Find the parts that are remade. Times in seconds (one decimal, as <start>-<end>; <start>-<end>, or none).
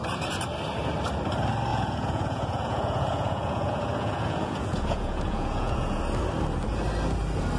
1.7-6.0